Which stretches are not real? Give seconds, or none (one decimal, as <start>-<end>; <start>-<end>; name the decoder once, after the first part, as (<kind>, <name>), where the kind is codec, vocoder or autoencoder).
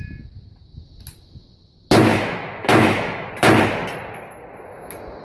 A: 2.1-3.3 (autoencoder, DAC-VAE)